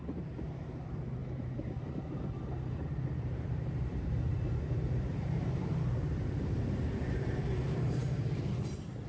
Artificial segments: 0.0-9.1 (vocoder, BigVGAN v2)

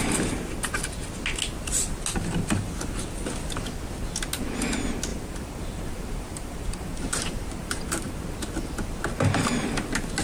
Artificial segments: 5.1-8.1 (vocoder, BigVGAN v2)

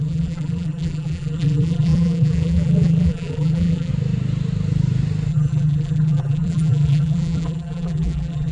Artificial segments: 0.0-3.9 (vocoder, BigVGAN v2); 5.3-8.5

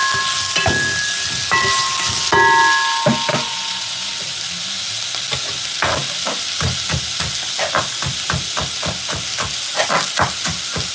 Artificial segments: 3.3-4.1 (vocoder, Vocos)